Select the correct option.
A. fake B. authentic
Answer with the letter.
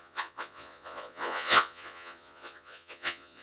A